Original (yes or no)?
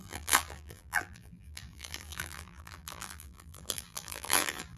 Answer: no